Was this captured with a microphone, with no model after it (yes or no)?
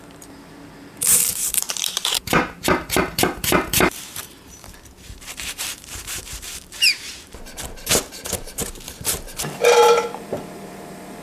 no